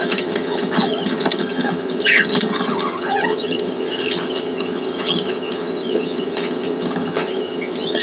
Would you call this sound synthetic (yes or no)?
yes